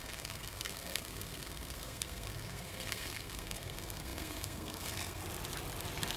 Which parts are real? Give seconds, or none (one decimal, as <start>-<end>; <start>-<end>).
5.2-6.2